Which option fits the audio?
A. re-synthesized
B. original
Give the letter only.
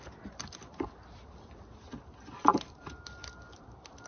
B